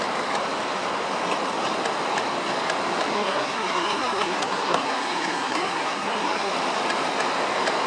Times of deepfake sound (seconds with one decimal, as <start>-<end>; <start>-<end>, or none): 3.1-6.5